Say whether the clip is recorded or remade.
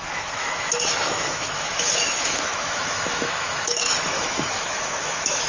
remade